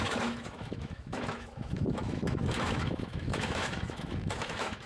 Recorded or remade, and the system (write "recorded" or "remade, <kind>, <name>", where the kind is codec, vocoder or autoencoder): remade, autoencoder, DAC-VAE